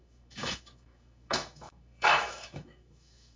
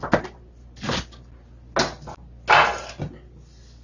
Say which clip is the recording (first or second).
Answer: second